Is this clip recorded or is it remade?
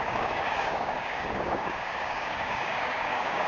remade